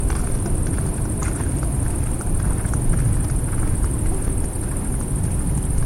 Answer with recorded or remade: recorded